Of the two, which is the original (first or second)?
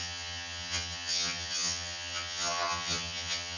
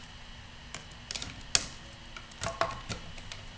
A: second